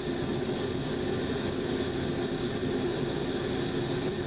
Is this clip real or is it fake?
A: real